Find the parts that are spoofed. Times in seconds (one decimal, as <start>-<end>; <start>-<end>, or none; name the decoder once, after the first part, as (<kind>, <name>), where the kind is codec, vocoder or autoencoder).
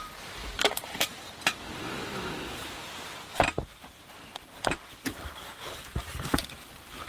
0.0-1.1 (vocoder, BigVGAN v2); 4.1-7.1